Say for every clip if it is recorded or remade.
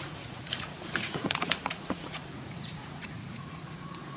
remade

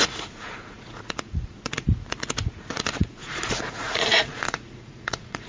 remade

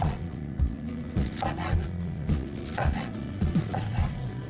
remade